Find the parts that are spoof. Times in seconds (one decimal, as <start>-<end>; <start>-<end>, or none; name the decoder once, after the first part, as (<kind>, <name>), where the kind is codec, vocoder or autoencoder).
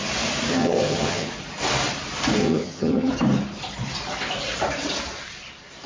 0.5-1.3 (vocoder, HiFi-GAN); 2.4-3.1